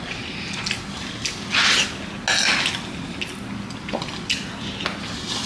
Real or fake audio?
real